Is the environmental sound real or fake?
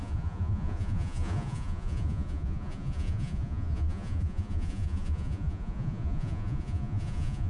fake